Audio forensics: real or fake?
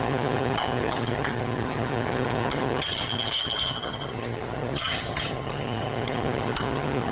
fake